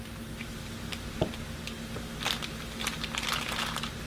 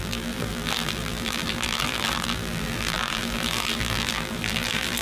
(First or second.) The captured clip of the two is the first